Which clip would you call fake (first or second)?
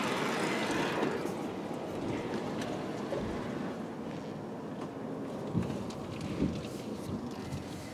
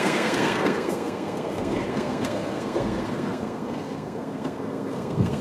second